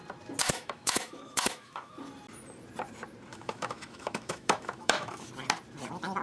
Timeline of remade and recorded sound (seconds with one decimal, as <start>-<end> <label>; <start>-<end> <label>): 0.0-0.4 recorded; 0.4-1.9 remade; 1.9-3.3 recorded; 3.3-5.3 remade; 5.3-6.2 recorded